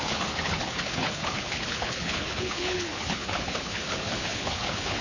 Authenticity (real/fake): fake